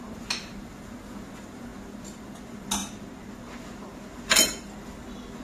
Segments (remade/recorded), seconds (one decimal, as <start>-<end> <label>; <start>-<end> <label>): 0.0-5.4 recorded